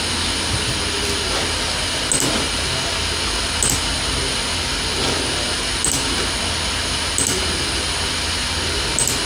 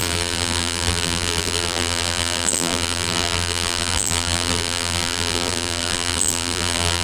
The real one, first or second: first